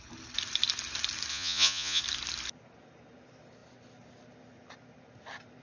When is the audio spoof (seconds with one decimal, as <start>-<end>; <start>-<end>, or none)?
1.3-2.0